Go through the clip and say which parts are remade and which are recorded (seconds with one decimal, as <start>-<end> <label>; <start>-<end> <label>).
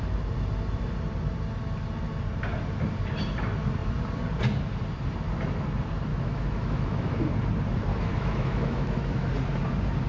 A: 0.0-6.1 recorded; 6.1-7.1 remade; 7.1-7.9 recorded; 7.9-9.3 remade; 9.3-10.1 recorded